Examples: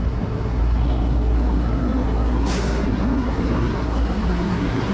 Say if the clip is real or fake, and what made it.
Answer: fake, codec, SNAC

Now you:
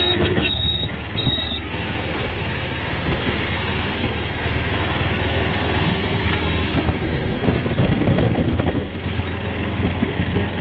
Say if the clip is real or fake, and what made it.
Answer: fake, codec, SNAC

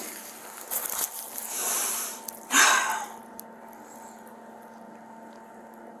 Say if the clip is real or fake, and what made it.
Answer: real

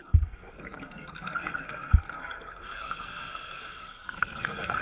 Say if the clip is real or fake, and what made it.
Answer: fake, codec, SNAC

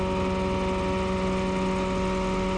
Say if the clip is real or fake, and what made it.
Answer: real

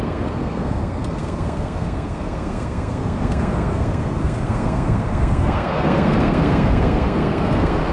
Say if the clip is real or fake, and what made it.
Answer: fake, codec, SNAC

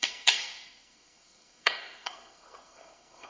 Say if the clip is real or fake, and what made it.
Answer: fake, codec, SNAC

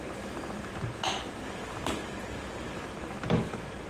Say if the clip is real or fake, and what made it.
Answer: real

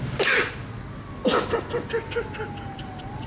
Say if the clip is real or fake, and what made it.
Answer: real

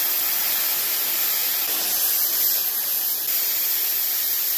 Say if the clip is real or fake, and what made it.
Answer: real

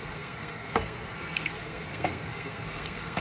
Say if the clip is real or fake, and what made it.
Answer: fake, codec, SNAC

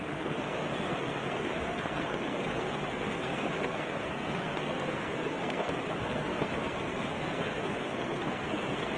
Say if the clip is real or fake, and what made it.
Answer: fake, codec, SNAC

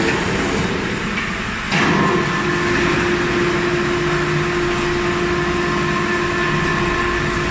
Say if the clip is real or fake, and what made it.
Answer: real